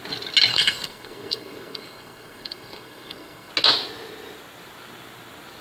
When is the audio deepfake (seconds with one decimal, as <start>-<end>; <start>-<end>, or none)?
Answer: 0.5-3.5